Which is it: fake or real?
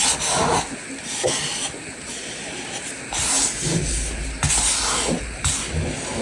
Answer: real